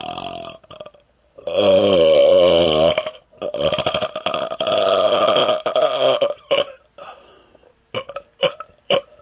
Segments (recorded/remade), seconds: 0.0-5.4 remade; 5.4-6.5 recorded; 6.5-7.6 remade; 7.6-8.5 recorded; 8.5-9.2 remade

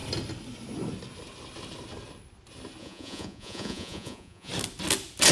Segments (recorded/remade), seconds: 0.0-2.8 recorded; 2.8-4.5 remade; 4.5-5.3 recorded

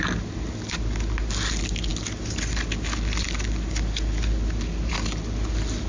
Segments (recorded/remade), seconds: 0.0-5.9 recorded

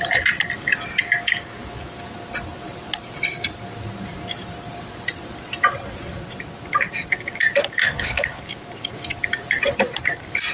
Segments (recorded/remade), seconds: 0.0-7.8 recorded; 7.8-8.4 remade; 8.4-10.5 recorded